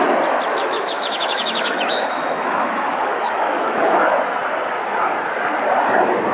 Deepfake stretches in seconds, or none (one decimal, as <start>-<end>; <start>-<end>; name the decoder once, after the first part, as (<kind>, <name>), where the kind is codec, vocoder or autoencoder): 0.6-4.2 (autoencoder, DAC-VAE)